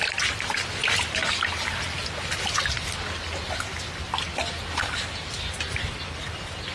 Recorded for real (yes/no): yes